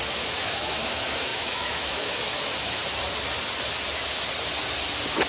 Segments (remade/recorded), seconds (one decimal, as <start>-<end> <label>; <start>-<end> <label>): 0.0-2.8 remade; 2.8-5.3 recorded